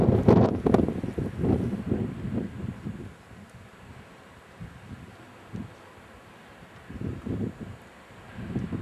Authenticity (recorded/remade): recorded